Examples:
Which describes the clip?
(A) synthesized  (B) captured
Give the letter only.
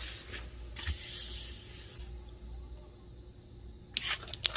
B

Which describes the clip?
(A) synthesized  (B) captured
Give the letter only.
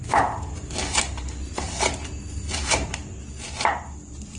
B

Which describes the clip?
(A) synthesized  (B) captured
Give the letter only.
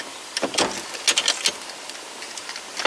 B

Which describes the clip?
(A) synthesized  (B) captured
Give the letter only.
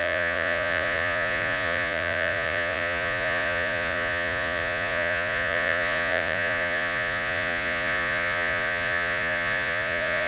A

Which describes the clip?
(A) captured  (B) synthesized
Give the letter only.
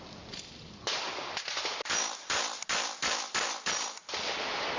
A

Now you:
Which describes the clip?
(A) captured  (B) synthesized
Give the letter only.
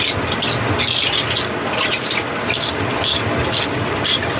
A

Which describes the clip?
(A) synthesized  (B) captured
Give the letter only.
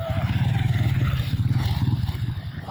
B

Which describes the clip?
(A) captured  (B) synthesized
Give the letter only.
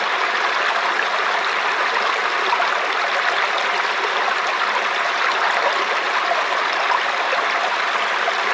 A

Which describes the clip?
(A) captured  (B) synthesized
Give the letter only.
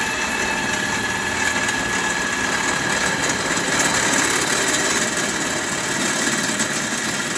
A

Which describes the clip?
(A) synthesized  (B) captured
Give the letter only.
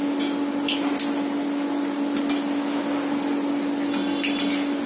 B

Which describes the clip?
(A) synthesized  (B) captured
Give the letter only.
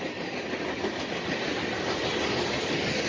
B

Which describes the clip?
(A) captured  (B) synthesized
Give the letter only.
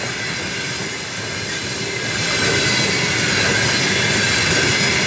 A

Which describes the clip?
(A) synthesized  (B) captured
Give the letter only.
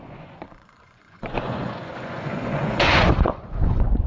A